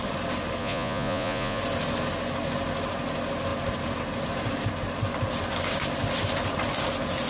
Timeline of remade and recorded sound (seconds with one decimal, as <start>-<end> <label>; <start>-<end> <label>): 0.0-0.6 recorded; 0.6-1.6 remade; 1.6-7.3 recorded